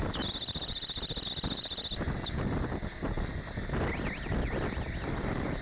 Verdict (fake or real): real